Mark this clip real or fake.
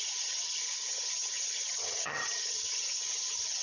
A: fake